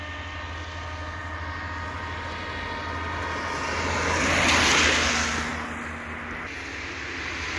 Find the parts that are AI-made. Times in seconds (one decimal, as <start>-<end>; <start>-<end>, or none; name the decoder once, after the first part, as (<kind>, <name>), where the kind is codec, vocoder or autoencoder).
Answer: none